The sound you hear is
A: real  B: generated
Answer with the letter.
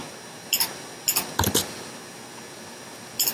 A